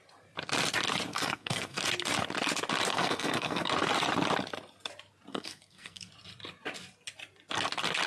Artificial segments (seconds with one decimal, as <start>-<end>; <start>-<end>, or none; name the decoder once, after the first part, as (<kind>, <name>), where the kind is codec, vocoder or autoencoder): 1.1-1.8 (codec, SNAC); 2.9-3.7; 5.3-6.1